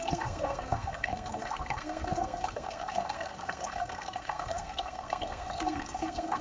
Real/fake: fake